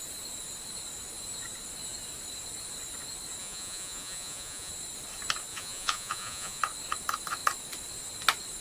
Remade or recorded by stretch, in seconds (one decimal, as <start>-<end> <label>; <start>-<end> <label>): 0.0-3.4 recorded; 3.4-4.7 remade; 4.7-5.5 recorded; 5.5-6.6 remade; 6.6-8.6 recorded